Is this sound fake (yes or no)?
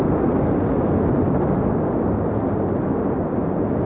no